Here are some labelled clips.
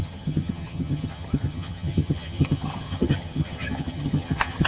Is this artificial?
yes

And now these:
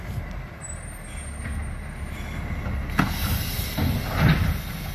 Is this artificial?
no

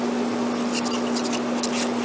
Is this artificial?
no